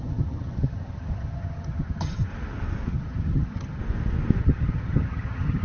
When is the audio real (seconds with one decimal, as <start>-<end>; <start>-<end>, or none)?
2.3-2.9; 3.8-4.4